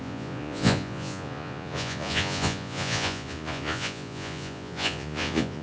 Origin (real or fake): fake